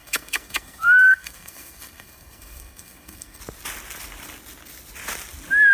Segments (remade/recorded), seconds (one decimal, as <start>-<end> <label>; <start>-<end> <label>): 0.0-3.4 remade; 3.4-5.7 recorded